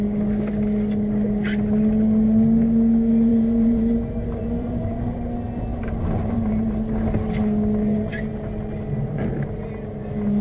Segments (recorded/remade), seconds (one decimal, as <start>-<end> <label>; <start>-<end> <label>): 0.0-3.3 recorded; 3.3-5.1 remade; 5.1-5.7 recorded; 5.7-6.9 remade; 6.9-10.4 recorded